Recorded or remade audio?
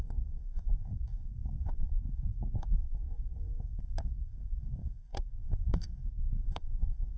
remade